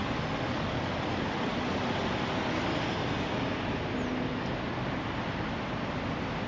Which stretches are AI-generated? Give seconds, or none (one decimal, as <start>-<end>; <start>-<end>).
none